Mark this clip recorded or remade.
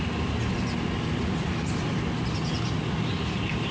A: recorded